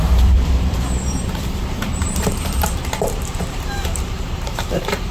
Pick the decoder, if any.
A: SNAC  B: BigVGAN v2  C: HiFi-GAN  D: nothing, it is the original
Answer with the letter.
B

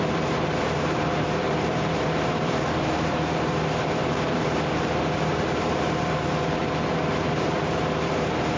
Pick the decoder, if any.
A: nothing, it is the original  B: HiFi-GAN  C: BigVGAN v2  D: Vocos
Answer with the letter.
C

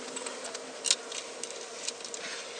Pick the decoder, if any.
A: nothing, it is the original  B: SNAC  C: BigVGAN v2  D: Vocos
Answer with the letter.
A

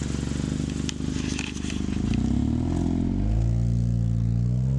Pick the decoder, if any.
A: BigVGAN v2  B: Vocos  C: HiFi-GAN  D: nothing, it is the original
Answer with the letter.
D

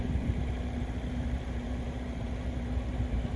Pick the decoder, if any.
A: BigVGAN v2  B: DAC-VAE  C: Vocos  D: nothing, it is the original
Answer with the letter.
A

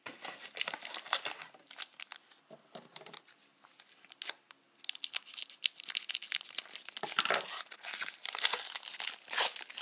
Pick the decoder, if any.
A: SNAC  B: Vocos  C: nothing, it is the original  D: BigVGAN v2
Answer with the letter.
C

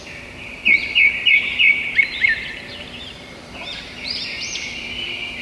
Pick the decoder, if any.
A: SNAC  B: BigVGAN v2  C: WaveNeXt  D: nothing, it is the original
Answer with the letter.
B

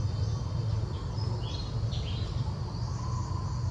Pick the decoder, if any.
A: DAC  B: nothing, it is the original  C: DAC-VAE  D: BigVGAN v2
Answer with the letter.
B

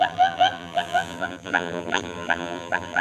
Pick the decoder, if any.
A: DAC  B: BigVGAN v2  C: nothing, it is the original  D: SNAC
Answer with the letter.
B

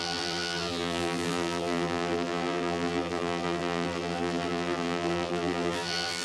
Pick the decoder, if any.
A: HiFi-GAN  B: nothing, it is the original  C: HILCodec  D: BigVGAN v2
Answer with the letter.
D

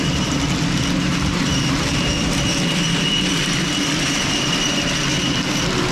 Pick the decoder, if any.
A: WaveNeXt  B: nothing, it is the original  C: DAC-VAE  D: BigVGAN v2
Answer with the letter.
D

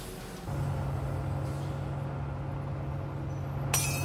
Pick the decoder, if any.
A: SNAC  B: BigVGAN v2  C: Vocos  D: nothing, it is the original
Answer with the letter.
D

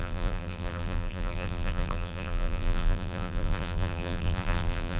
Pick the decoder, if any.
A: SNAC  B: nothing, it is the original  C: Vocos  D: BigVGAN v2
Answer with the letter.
D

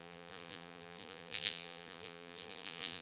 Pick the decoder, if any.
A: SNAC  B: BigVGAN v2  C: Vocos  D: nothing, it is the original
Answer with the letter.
B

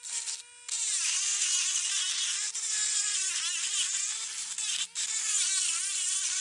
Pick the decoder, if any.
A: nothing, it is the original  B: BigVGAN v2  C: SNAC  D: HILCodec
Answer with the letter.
A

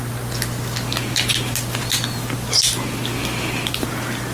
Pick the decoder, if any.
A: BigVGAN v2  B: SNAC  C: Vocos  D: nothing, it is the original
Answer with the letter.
D